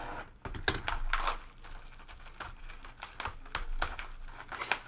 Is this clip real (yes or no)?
yes